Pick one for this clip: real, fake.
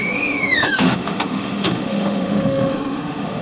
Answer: fake